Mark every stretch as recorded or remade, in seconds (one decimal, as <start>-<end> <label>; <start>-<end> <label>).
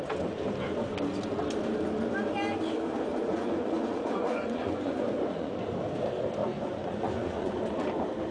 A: 0.0-3.1 recorded; 3.1-5.6 remade; 5.6-6.4 recorded; 6.4-7.6 remade; 7.6-8.3 recorded